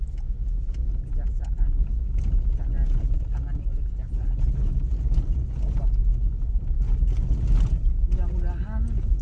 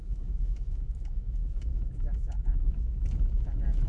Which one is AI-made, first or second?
second